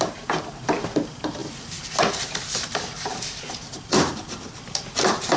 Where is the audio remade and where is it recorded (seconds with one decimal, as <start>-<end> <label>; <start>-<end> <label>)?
0.0-5.4 remade